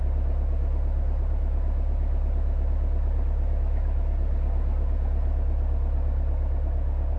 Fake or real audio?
real